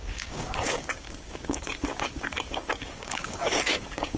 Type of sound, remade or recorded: remade